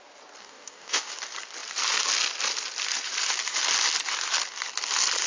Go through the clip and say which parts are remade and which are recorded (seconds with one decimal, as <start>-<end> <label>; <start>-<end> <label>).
0.0-0.4 recorded; 0.4-1.1 remade; 1.1-5.3 recorded